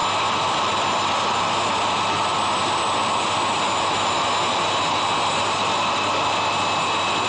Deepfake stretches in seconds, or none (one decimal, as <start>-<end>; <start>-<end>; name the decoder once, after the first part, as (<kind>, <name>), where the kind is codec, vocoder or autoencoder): none